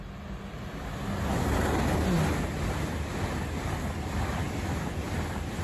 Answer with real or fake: real